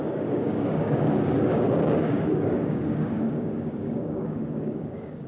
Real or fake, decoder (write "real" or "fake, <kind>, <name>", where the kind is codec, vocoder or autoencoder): fake, codec, DAC